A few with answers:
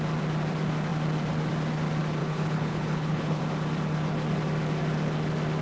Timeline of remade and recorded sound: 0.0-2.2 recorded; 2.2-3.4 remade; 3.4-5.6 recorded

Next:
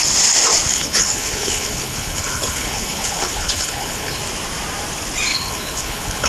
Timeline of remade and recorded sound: 0.0-0.7 recorded; 0.7-4.2 remade; 4.2-5.3 recorded; 5.3-6.3 remade

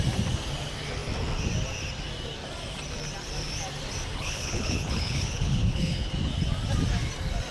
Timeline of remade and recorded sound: 0.0-4.1 recorded; 4.1-6.1 remade; 6.1-7.5 recorded

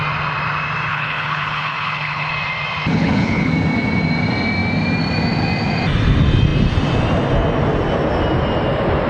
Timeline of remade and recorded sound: 0.0-0.9 recorded; 0.9-2.3 remade; 2.3-2.9 recorded; 2.9-3.5 remade; 3.5-9.1 recorded

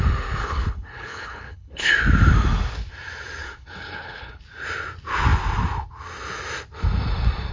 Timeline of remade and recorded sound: 0.0-0.4 recorded; 0.4-1.9 remade; 1.9-3.4 recorded; 3.4-4.4 remade; 4.4-7.5 recorded

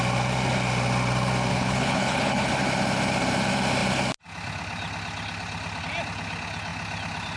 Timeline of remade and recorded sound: 0.0-1.5 recorded; 1.5-2.5 remade; 2.5-7.4 recorded

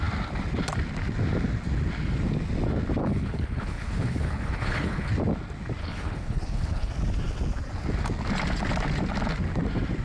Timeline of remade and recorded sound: 0.0-3.0 recorded; 3.0-5.1 remade; 5.1-5.8 recorded; 5.8-6.9 remade; 6.9-10.0 recorded

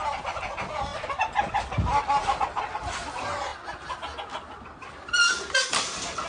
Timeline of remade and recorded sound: 0.0-6.3 recorded